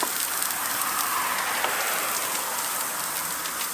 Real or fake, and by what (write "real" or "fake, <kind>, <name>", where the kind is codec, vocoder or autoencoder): real